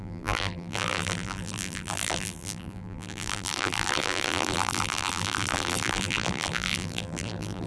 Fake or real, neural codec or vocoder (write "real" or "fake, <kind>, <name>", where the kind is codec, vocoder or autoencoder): fake, vocoder, BigVGAN v2